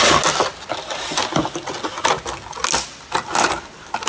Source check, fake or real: real